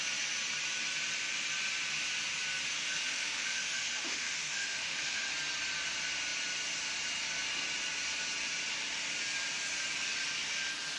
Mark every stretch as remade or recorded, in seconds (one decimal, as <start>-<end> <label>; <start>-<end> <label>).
0.0-2.8 recorded; 2.8-5.3 remade; 5.3-11.0 recorded